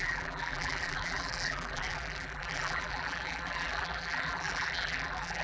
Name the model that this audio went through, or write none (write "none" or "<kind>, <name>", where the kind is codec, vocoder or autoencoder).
vocoder, BigVGAN v2